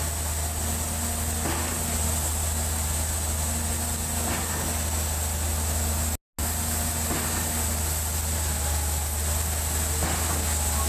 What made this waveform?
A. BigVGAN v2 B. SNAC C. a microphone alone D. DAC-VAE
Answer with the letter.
C